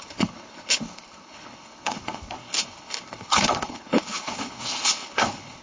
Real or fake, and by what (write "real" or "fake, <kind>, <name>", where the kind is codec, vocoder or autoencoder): fake, codec, HILCodec